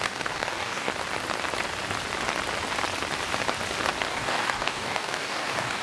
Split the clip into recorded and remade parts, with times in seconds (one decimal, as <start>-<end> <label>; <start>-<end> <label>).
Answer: 0.0-0.9 remade; 0.9-4.1 recorded; 4.1-5.8 remade